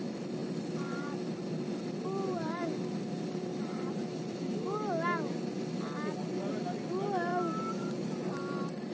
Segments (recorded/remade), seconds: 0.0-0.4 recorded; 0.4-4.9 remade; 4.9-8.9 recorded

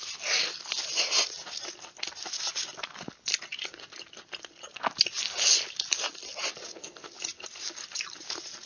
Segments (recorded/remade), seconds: 0.0-8.7 recorded

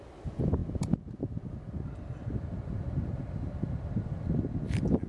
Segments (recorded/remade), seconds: 0.0-5.1 recorded

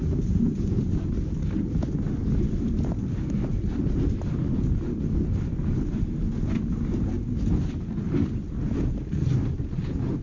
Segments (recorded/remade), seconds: 0.0-10.2 recorded

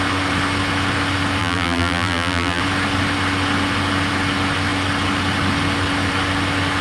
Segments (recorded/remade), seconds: 0.0-1.4 recorded; 1.4-2.6 remade; 2.6-6.8 recorded

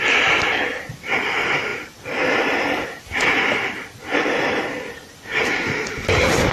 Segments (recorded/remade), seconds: 0.0-6.5 recorded

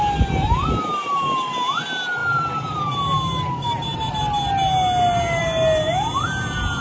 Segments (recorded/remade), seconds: 0.0-2.2 recorded; 2.2-2.8 remade; 2.8-6.8 recorded